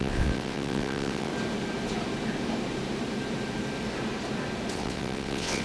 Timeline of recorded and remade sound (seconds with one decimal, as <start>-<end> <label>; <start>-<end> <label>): 0.0-1.3 remade; 1.3-4.7 recorded; 4.7-5.6 remade